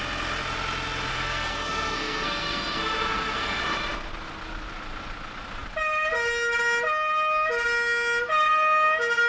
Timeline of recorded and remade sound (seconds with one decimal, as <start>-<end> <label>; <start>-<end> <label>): 0.0-1.1 recorded; 1.1-3.6 remade; 3.6-9.3 recorded